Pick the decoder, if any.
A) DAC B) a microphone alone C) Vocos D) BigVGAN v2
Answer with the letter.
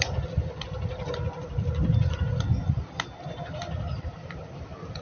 B